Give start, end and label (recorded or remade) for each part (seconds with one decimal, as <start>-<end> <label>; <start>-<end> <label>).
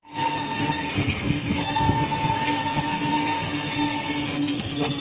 0.0-5.0 remade